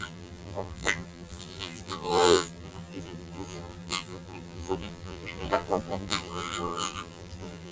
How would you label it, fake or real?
fake